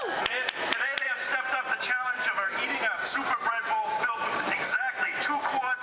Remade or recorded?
recorded